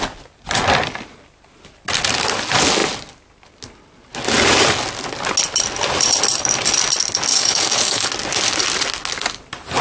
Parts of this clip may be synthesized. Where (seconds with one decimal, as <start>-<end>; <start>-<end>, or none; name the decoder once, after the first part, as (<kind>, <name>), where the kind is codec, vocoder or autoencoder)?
7.3-8.1 (codec, DAC)